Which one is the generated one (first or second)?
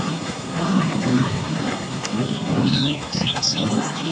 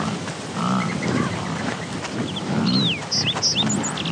first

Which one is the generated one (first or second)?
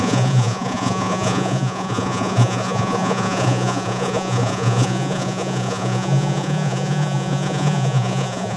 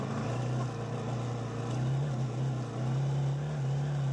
first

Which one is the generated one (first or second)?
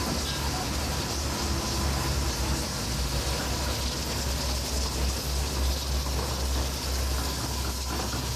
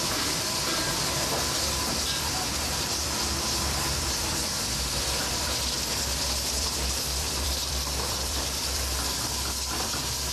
second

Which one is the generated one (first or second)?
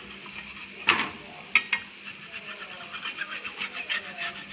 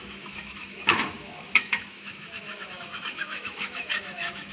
second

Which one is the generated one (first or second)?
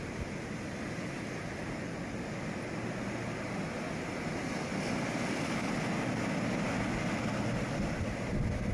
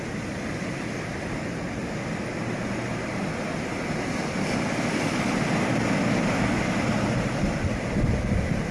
second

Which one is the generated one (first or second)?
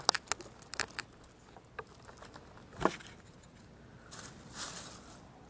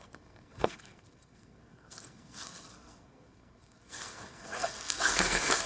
second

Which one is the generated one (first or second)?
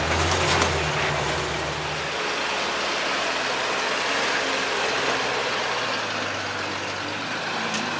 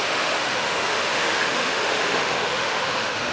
second